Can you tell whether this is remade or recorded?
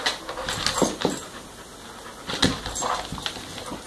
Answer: recorded